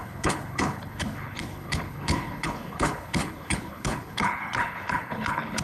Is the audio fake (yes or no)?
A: yes